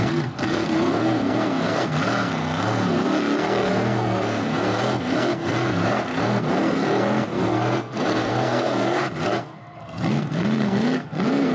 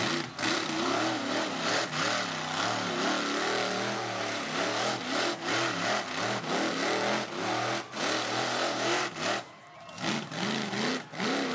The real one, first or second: second